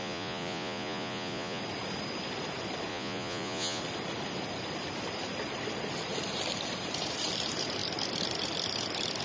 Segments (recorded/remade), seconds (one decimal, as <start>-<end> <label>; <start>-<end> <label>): 0.0-1.6 remade; 1.6-2.9 recorded; 2.9-3.8 remade; 3.8-9.2 recorded